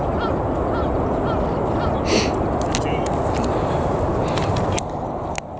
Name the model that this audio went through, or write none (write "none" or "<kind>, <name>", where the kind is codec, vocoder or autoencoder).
none